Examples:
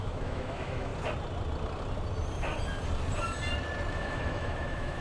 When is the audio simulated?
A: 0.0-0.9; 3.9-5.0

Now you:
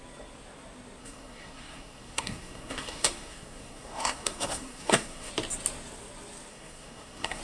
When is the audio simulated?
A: 1.0-5.3; 6.5-7.4

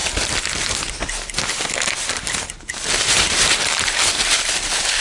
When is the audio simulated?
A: 3.0-5.0

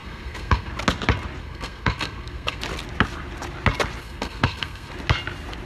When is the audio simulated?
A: 0.0-0.7; 1.4-2.6; 4.0-4.9

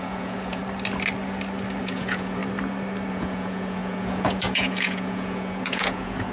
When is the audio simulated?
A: 0.0-0.6; 1.8-2.4; 3.1-6.3

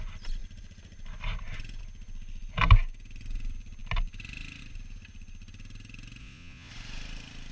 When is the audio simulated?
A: 6.2-6.7

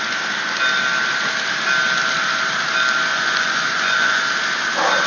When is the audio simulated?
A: 3.1-4.2

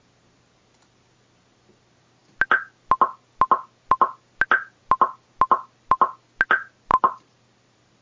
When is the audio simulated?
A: 6.9-7.4